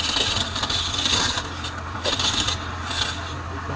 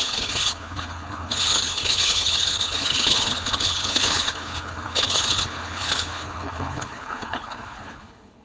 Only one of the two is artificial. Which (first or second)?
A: second